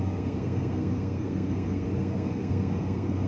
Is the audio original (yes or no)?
no